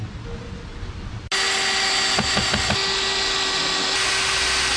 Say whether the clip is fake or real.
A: real